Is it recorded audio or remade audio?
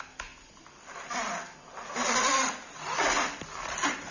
recorded